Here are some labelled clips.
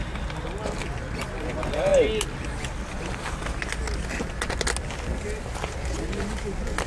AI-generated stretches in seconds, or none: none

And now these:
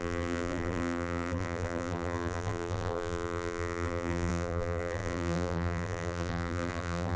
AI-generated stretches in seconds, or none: 0.0-7.2 (vocoder, BigVGAN v2)

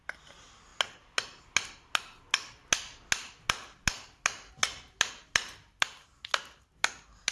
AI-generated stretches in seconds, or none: none

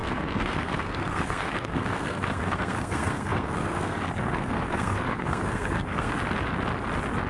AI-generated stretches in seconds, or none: 0.0-6.1 (codec, SNAC)

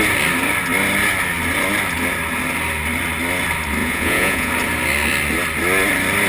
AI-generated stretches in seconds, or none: 3.8-4.5 (vocoder, Vocos)

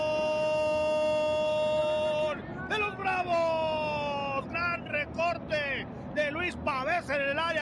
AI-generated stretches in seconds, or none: none

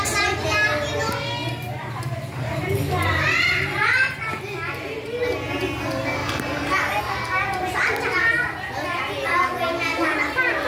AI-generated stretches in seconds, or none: 1.4-4.4 (vocoder, BigVGAN v2); 6.2-7.0

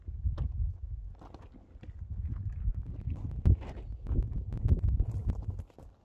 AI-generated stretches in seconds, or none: none